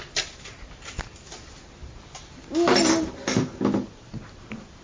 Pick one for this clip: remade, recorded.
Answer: recorded